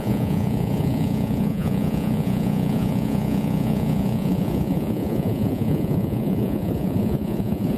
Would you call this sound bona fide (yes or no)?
no